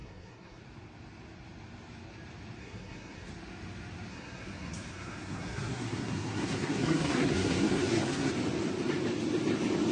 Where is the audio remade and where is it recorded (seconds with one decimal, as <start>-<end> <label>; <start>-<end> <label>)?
0.0-0.6 remade; 0.6-2.6 recorded; 2.6-3.3 remade; 3.3-4.1 recorded; 4.1-8.3 remade; 8.3-9.9 recorded